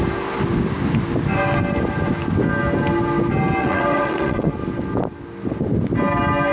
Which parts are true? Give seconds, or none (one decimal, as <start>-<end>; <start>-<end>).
0.0-3.6; 4.5-6.5